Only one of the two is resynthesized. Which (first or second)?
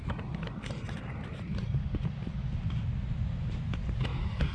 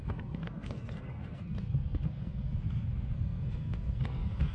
second